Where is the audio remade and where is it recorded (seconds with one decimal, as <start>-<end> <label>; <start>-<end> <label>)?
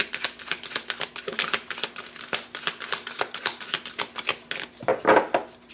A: 0.0-5.7 recorded